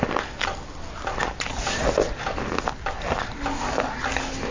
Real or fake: real